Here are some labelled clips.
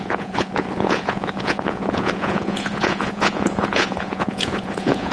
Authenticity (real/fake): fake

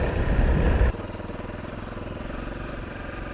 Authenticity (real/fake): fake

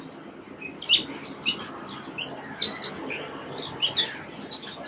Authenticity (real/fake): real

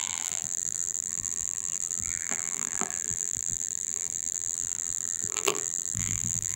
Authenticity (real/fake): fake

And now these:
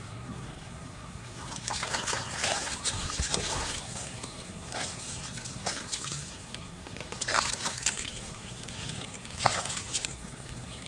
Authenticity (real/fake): fake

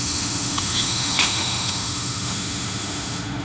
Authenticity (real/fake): fake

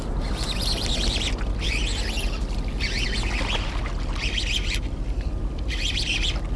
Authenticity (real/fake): real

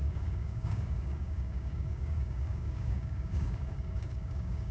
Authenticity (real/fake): fake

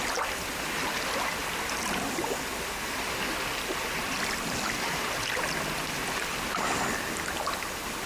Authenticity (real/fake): real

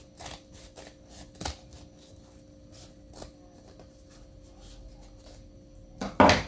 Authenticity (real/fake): real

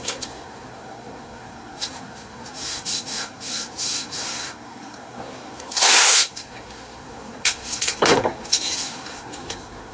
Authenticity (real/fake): fake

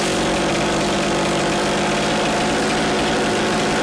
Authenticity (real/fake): real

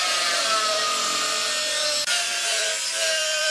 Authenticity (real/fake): fake